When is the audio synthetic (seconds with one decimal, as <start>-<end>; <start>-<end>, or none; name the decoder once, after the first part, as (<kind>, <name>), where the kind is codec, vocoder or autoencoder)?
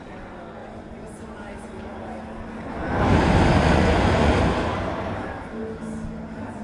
0.6-1.7 (vocoder, Vocos); 3.5-4.3